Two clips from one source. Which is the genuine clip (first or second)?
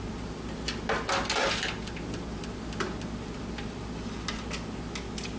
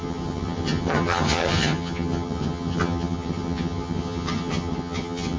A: first